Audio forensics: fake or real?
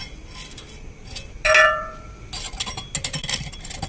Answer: real